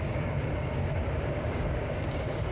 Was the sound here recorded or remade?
remade